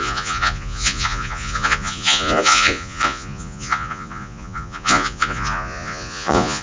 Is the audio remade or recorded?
remade